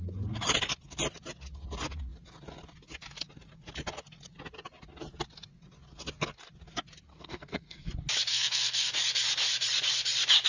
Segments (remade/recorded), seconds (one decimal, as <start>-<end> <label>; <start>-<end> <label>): 0.0-7.1 recorded; 7.1-7.9 remade; 7.9-8.3 recorded; 8.3-8.9 remade; 8.9-10.5 recorded